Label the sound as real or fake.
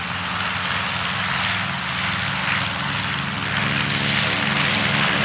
real